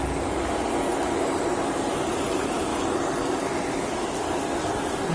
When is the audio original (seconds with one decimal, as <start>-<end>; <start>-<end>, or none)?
0.0-5.1